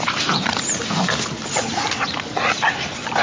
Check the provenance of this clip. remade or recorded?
recorded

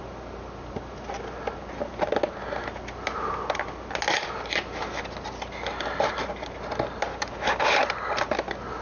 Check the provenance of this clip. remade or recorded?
recorded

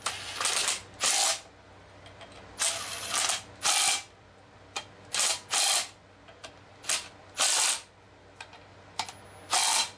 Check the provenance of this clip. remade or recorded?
recorded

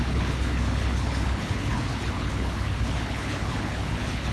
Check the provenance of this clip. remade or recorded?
remade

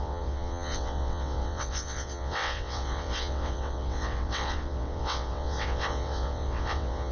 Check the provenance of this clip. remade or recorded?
remade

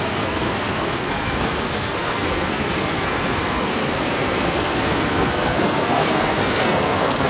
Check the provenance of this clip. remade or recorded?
remade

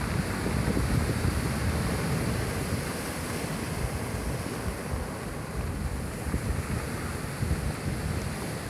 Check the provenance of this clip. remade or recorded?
recorded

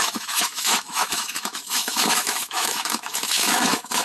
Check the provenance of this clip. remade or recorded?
remade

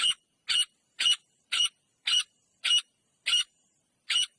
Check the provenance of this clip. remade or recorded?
recorded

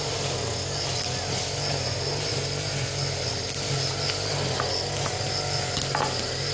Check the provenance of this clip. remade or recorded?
recorded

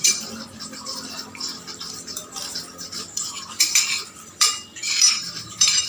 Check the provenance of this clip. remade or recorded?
remade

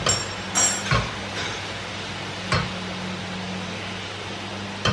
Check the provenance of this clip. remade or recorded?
recorded